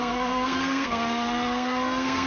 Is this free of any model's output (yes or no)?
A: no